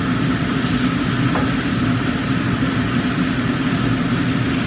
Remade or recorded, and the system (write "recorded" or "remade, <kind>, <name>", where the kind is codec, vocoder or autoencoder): recorded